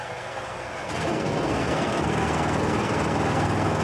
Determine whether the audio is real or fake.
fake